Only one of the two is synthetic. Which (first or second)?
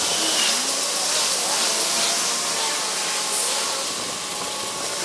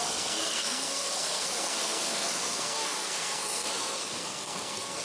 second